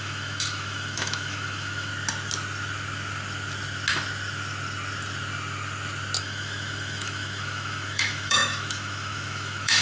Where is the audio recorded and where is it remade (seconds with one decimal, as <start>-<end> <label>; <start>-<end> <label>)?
0.0-1.9 remade; 1.9-6.2 recorded; 6.2-9.8 remade